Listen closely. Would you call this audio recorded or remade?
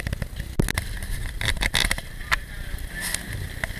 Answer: recorded